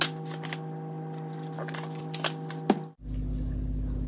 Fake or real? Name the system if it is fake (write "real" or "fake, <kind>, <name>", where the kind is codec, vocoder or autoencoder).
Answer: real